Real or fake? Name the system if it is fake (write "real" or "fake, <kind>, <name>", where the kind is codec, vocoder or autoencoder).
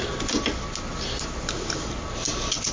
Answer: real